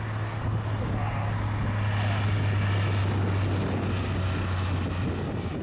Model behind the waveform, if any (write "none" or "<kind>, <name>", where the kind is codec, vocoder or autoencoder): none